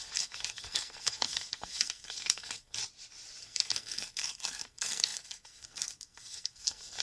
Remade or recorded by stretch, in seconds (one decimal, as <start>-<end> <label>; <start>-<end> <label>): 0.0-2.8 remade; 2.8-3.4 recorded; 3.4-7.0 remade